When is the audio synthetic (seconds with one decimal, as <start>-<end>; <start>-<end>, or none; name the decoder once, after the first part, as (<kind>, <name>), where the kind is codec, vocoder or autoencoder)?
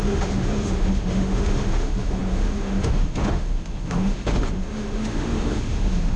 0.0-6.2 (autoencoder, DAC-VAE)